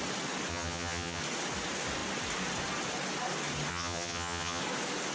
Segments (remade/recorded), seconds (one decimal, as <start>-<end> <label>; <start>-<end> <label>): 0.0-0.5 recorded; 0.5-1.2 remade; 1.2-3.7 recorded; 3.7-4.6 remade; 4.6-5.1 recorded